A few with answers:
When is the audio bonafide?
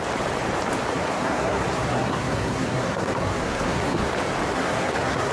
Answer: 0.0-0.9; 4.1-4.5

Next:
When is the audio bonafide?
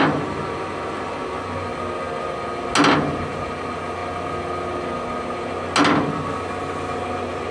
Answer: 0.0-7.5